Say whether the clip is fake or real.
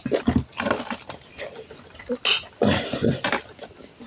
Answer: real